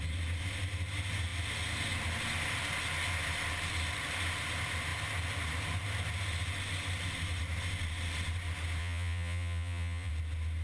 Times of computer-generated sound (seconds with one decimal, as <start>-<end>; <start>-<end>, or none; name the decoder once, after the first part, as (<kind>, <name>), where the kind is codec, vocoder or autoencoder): 8.8-10.1 (vocoder, Vocos)